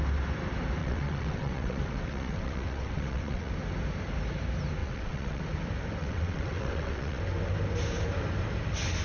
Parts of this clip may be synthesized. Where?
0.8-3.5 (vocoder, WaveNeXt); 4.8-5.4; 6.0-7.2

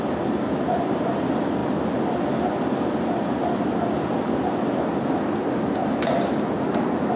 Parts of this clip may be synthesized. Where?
none

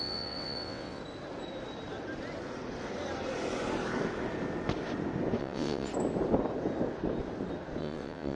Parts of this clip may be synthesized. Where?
0.0-1.0 (vocoder, WaveNeXt); 5.4-5.9; 7.8-8.4